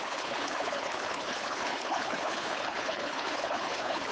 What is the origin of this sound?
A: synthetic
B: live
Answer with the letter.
A